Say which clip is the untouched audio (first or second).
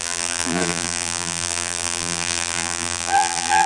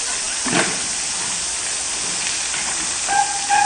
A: second